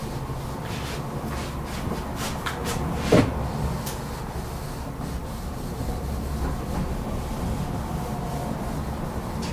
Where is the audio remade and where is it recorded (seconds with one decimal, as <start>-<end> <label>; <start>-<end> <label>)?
0.0-2.6 recorded; 2.6-3.2 remade; 3.2-5.2 recorded; 5.2-7.3 remade; 7.3-9.5 recorded